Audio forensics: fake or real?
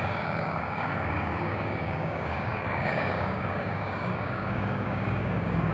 fake